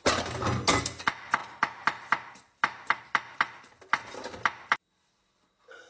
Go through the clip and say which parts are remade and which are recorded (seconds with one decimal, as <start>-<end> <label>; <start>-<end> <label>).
0.0-5.9 recorded